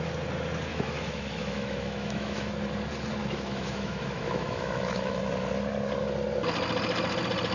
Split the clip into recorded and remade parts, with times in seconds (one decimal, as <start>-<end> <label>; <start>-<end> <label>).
0.0-0.7 recorded; 0.7-2.5 remade; 2.5-3.2 recorded; 3.2-5.2 remade; 5.2-7.5 recorded